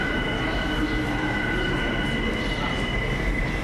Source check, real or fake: real